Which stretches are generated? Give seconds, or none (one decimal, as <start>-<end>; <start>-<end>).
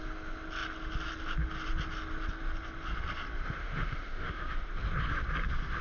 3.6-4.7